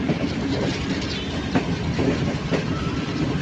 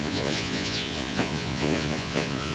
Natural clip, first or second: first